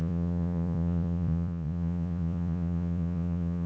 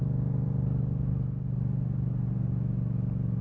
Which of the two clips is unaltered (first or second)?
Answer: second